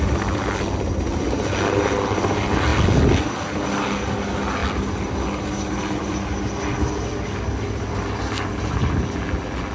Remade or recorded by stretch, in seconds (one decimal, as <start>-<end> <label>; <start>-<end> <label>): 0.0-9.7 recorded